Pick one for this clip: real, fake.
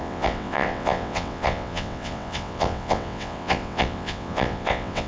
fake